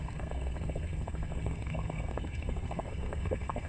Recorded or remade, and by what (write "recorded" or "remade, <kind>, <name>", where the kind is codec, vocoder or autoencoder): remade, codec, SNAC